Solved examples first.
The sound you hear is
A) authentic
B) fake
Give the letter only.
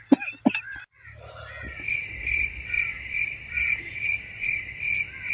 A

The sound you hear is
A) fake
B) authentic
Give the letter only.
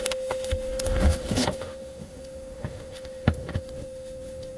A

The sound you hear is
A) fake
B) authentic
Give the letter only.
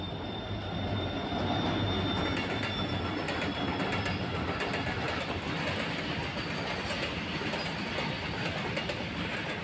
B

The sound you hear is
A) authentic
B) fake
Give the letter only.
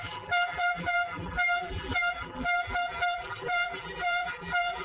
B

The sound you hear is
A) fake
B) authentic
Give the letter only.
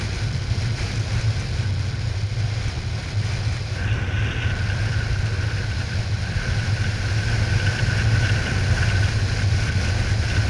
B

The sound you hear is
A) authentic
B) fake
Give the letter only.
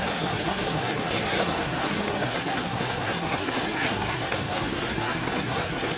B